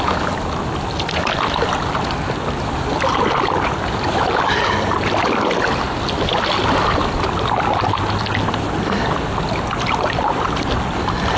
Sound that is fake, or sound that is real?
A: real